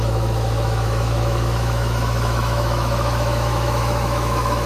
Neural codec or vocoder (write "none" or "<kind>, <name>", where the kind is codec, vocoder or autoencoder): autoencoder, DAC-VAE